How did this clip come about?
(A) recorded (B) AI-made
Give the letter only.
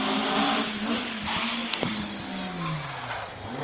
A